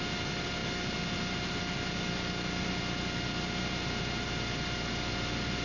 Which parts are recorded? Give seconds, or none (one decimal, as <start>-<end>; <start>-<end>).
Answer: 0.0-5.6